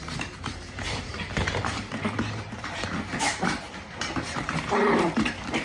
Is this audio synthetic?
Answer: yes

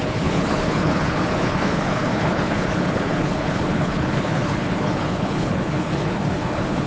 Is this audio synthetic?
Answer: yes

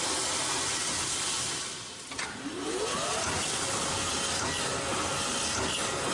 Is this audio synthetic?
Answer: no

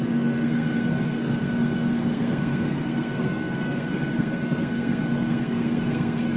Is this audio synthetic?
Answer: yes